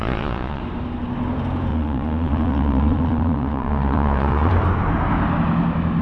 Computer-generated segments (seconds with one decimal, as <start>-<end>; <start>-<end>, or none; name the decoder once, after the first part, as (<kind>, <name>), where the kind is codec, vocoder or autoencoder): 0.0-0.6 (vocoder, Vocos); 1.7-4.5